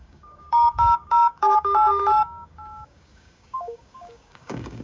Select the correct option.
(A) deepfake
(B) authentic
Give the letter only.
A